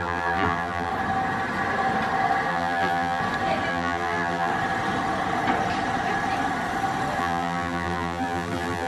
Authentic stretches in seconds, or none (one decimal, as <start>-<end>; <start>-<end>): 0.9-2.5; 3.2-3.7; 4.5-7.2